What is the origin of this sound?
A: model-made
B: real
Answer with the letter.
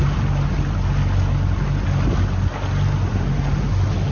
B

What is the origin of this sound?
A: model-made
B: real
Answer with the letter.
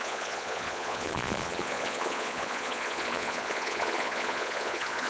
A